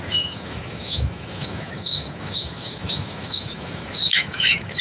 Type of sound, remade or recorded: remade